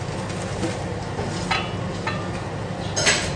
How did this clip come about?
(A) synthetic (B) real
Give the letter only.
B